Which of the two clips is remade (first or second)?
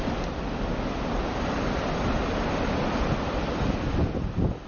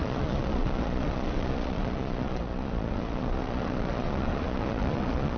second